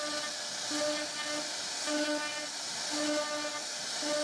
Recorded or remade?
recorded